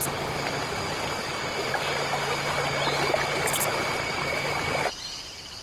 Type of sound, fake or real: real